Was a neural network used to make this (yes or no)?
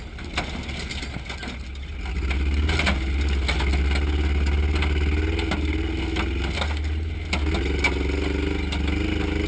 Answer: no